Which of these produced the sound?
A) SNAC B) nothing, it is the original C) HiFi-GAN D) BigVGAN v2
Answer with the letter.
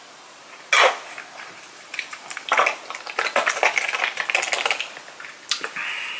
B